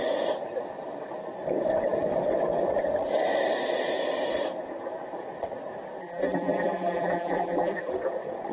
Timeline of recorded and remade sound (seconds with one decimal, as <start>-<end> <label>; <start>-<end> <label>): 0.0-6.0 recorded; 6.0-7.9 remade; 7.9-8.5 recorded